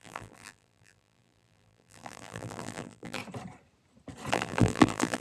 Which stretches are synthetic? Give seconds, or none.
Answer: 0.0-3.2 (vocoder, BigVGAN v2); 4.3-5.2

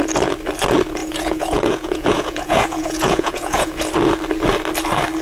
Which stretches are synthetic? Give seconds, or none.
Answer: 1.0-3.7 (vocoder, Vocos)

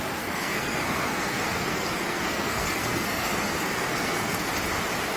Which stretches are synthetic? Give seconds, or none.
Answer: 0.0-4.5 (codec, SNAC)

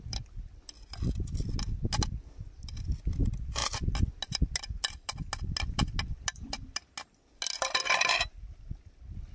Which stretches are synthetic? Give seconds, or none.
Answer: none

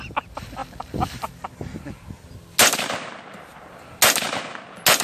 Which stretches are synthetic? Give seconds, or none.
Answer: none